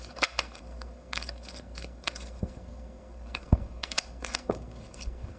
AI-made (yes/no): yes